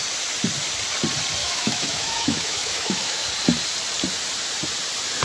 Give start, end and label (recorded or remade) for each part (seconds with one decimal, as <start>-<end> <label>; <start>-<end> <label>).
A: 0.0-1.4 recorded; 1.4-3.2 remade; 3.2-5.2 recorded